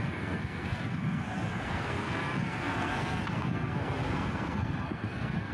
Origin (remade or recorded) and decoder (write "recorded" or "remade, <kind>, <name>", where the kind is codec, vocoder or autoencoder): remade, codec, SNAC